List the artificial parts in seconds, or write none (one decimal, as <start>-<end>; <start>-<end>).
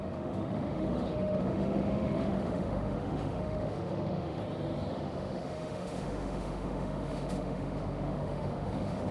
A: 0.0-4.4; 4.9-9.1